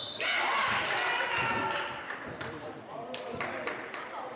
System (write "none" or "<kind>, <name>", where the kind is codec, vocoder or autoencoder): vocoder, BigVGAN v2